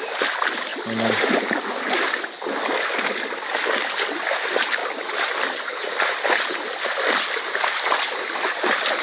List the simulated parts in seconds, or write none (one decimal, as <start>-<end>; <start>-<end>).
none